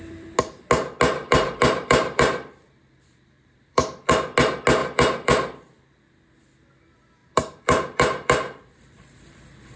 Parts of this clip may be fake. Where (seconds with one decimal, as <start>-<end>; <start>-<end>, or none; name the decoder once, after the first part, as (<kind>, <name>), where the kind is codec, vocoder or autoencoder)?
1.2-4.1 (vocoder, BigVGAN v2); 4.8-6.0; 7.2-9.8